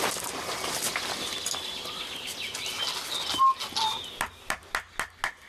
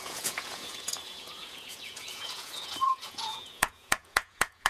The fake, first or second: second